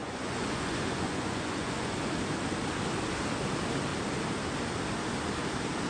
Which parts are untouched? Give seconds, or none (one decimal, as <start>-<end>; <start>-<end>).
2.0-5.9